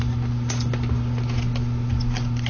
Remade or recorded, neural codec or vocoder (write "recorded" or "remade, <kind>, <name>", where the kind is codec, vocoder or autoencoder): recorded